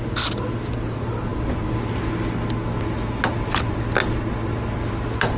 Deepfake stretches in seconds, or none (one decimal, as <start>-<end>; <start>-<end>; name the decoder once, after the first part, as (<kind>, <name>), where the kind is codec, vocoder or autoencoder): none